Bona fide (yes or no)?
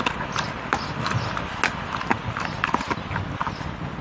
yes